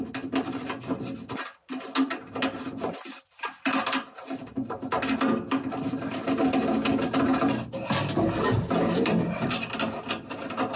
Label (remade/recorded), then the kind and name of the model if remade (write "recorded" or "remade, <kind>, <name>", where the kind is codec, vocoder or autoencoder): recorded